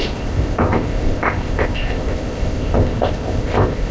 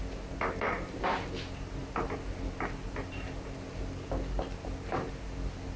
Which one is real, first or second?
second